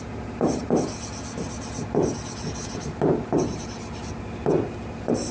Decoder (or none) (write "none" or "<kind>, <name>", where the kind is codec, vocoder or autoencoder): none